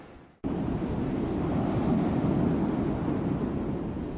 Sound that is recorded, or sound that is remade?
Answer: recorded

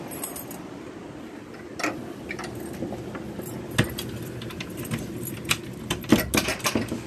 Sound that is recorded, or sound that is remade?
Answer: recorded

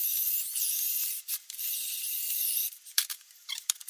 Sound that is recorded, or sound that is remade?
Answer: remade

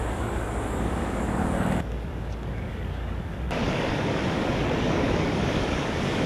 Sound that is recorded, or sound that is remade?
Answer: remade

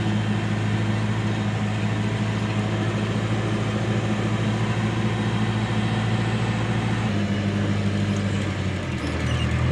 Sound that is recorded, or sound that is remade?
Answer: recorded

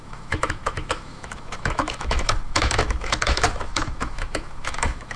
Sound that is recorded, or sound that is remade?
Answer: remade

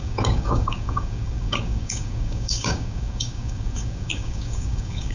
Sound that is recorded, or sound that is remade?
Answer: remade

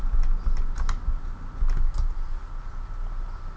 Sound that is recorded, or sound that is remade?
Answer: recorded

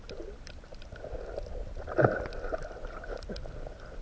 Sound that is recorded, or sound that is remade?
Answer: recorded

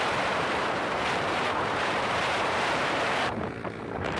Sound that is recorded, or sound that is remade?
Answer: remade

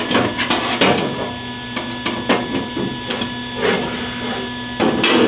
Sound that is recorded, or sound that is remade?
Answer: recorded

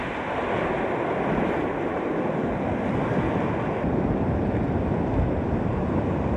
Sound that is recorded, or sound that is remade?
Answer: recorded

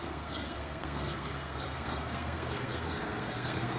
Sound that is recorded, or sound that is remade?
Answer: remade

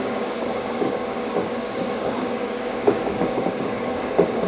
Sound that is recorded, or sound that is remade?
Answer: remade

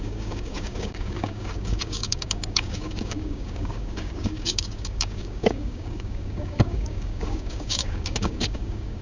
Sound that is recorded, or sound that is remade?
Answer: remade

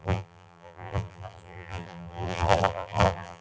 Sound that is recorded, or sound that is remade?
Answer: remade